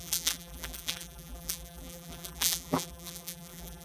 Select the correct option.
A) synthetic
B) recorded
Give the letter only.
A